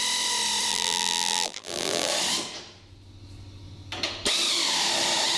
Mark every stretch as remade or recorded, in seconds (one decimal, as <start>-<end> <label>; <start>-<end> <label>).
0.0-0.7 recorded; 0.7-2.1 remade; 2.1-5.4 recorded